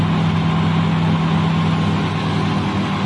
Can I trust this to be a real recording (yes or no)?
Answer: yes